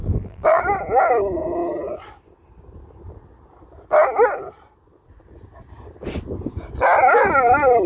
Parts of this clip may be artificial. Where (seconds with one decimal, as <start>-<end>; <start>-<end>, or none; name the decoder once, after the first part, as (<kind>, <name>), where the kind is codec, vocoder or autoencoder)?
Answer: 0.0-0.6 (vocoder, BigVGAN v2)